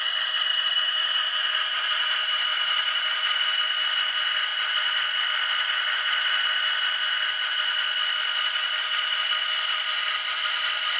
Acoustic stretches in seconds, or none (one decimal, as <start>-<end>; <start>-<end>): 0.0-0.5; 3.4-11.0